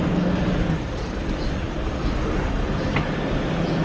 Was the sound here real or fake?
real